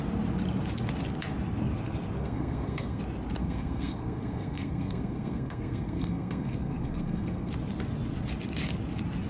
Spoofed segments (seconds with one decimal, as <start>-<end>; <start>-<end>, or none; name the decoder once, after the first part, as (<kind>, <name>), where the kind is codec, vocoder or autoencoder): 2.2-3.0 (codec, SNAC); 3.4-7.5